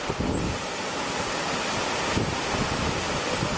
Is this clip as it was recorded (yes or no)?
yes